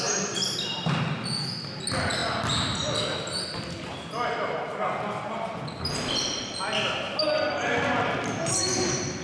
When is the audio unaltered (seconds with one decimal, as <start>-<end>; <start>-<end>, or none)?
0.0-9.2